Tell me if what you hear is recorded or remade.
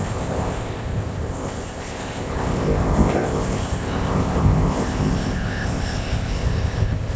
remade